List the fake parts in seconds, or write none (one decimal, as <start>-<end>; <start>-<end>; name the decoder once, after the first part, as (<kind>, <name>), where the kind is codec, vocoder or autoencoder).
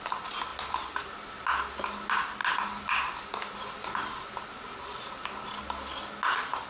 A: none